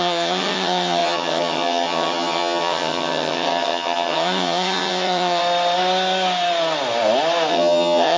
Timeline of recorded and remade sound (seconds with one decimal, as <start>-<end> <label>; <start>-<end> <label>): 0.0-5.4 remade; 5.4-7.5 recorded; 7.5-8.2 remade